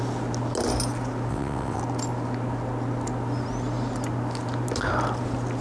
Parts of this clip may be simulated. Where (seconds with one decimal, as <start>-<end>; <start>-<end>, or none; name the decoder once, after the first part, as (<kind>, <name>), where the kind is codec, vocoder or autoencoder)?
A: 1.3-1.8 (vocoder, WaveNeXt)